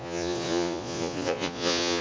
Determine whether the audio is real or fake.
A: fake